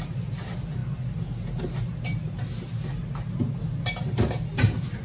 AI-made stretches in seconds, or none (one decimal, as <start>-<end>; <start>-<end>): none